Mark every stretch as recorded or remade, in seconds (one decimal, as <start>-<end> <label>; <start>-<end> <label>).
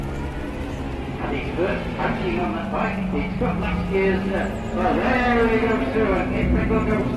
0.0-7.2 recorded